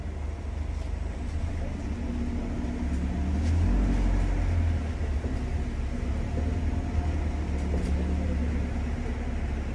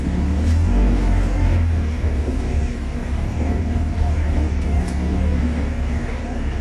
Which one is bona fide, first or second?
first